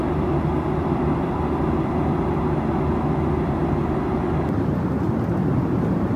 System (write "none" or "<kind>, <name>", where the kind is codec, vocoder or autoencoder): none